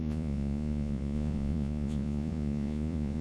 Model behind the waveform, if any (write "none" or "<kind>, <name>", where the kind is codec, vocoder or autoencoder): vocoder, Vocos